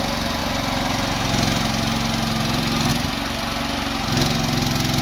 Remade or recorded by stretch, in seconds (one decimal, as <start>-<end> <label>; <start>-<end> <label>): 0.0-5.0 recorded